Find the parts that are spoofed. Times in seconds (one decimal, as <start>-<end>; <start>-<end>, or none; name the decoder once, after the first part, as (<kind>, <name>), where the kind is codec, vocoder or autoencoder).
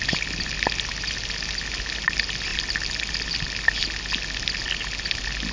none